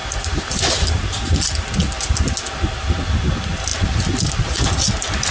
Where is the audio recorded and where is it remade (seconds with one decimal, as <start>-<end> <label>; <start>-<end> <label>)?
0.0-5.3 recorded